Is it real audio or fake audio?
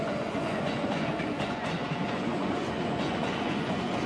fake